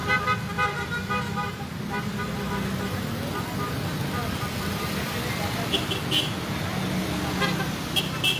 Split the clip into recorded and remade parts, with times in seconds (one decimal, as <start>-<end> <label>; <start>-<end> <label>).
0.0-8.4 recorded